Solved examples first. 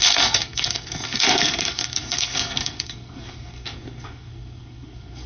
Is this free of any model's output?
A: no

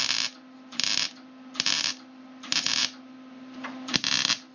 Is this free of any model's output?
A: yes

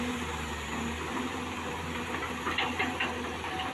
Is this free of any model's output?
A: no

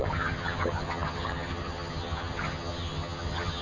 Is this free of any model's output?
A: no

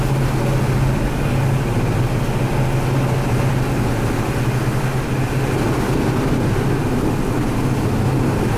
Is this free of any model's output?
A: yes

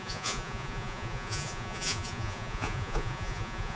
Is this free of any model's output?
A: no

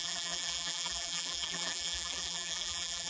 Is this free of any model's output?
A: no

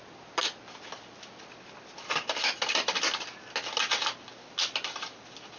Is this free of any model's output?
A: yes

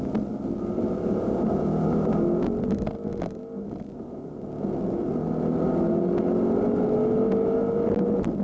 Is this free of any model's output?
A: yes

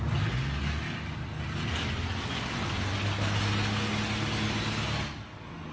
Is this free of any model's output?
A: yes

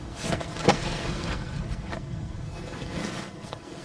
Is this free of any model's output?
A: no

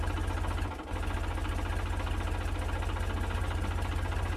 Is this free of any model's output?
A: yes